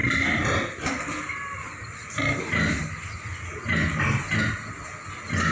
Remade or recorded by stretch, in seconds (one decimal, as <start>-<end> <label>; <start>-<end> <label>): 0.0-3.3 remade; 3.3-5.5 recorded